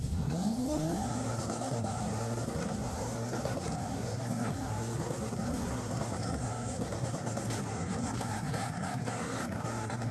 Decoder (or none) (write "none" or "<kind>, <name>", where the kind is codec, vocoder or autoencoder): codec, SNAC